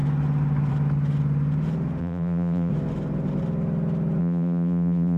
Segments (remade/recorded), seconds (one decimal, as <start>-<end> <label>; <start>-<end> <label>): 0.0-2.0 recorded; 2.0-2.7 remade; 2.7-4.2 recorded; 4.2-5.2 remade